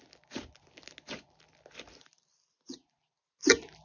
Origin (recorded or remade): recorded